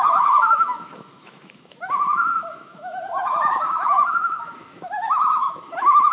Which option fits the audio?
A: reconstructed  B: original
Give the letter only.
A